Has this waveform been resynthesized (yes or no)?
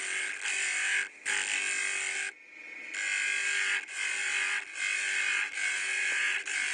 no